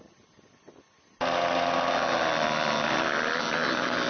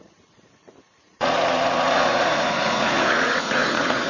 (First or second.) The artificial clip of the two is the second